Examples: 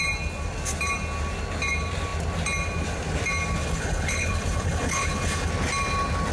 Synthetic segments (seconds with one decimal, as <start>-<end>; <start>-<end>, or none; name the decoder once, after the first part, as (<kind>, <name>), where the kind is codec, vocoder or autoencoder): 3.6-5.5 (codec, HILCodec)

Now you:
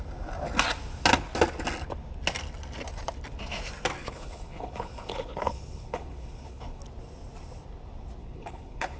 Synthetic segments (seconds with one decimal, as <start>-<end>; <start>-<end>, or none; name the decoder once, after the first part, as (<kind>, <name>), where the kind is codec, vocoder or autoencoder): 4.0-6.8 (codec, HILCodec); 8.2-9.0

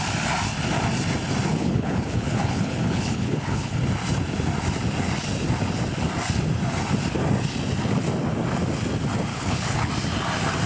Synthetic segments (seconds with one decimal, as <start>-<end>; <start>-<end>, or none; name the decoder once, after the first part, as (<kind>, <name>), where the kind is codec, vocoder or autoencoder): 1.5-3.8 (codec, HILCodec); 9.3-9.9

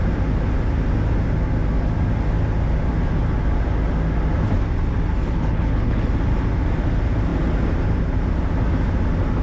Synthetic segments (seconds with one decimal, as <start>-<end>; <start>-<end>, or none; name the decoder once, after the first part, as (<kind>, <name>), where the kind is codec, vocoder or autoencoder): 5.2-6.1 (codec, HILCodec)